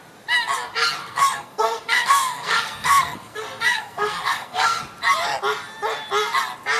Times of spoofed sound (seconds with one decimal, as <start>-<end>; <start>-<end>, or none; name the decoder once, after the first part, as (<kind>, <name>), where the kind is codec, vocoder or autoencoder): 1.0-4.8 (codec, SNAC)